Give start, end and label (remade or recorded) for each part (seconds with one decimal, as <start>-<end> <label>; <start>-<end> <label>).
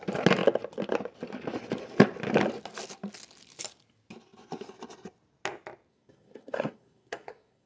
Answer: 0.0-5.9 recorded; 5.9-7.7 remade